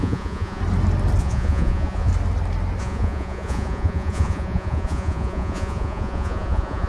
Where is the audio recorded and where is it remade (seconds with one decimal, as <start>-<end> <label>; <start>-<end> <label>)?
0.0-0.6 remade; 0.6-1.2 recorded; 1.2-2.1 remade; 2.1-2.8 recorded; 2.8-6.9 remade